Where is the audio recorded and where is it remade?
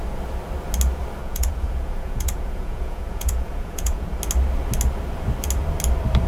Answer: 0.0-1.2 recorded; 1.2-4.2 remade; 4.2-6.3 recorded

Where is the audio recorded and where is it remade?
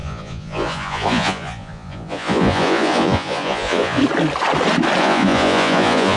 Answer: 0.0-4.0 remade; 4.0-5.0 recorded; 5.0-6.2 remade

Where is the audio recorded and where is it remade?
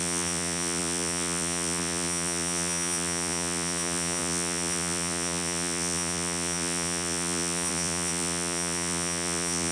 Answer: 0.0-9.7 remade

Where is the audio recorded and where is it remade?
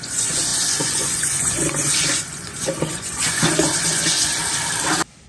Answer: 0.0-4.3 remade; 4.3-5.3 recorded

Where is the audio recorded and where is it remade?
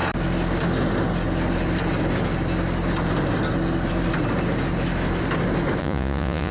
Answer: 0.0-5.8 recorded; 5.8-6.5 remade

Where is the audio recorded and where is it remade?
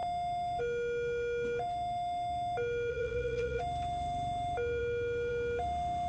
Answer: 0.0-2.9 recorded; 2.9-3.6 remade; 3.6-6.1 recorded